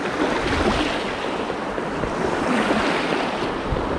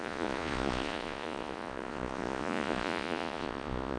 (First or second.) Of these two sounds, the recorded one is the first